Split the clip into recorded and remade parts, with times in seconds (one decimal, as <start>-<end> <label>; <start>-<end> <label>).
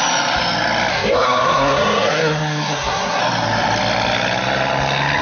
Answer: 0.0-0.9 recorded; 0.9-3.2 remade; 3.2-5.2 recorded